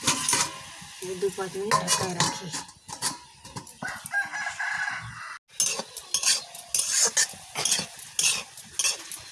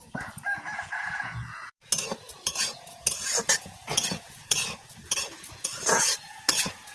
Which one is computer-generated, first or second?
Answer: second